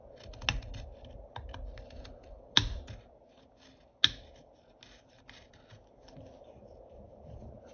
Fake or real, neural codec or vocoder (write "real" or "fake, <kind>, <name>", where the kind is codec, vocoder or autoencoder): real